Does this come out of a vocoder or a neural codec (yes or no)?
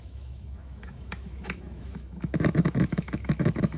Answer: yes